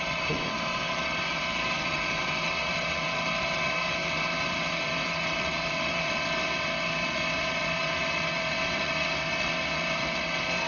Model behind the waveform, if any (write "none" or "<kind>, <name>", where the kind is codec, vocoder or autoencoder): vocoder, WaveNeXt